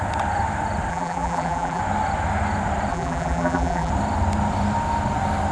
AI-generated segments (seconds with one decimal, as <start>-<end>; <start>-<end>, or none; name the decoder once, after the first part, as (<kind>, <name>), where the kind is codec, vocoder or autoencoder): 0.9-1.8 (vocoder, BigVGAN v2); 2.9-3.9